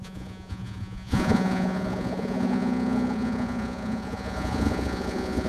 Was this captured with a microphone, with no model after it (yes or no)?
no